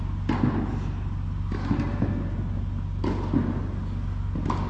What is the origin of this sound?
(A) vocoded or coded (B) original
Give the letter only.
B